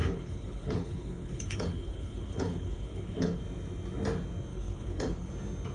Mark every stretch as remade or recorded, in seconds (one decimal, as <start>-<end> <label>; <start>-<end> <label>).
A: 0.0-3.4 remade; 3.4-4.5 recorded; 4.5-5.3 remade; 5.3-5.7 recorded